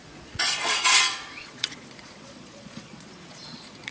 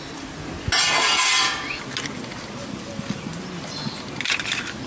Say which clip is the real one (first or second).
second